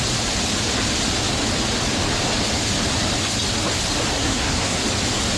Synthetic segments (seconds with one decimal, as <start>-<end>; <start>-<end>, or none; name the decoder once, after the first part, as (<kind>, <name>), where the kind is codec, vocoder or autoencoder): 4.1-4.8 (codec, SNAC)